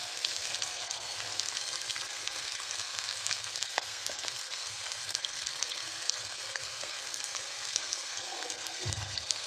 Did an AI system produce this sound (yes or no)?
yes